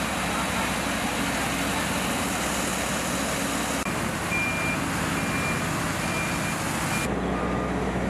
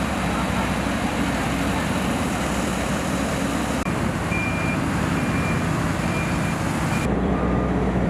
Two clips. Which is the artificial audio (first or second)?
second